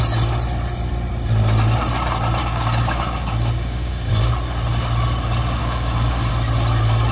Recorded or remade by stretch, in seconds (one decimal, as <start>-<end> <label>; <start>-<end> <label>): 0.0-2.4 recorded; 2.4-4.1 remade; 4.1-5.6 recorded; 5.6-6.3 remade; 6.3-7.1 recorded